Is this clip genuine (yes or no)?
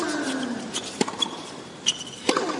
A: no